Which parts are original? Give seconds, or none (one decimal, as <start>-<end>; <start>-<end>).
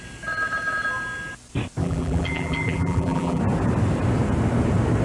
0.0-1.8; 3.4-5.0